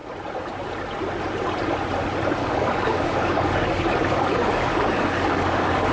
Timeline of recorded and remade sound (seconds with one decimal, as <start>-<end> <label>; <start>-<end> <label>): 0.0-2.4 recorded; 2.4-5.9 remade